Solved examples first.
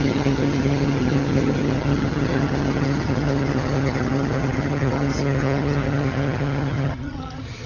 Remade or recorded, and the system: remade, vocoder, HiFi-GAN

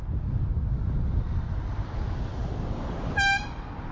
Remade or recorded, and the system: recorded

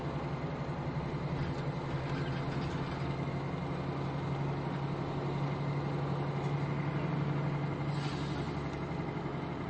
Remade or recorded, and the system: recorded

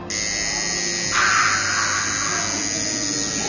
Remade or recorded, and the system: recorded